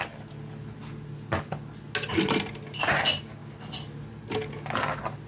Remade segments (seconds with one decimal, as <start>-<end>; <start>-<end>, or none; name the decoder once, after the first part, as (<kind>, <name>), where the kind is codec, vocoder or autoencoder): none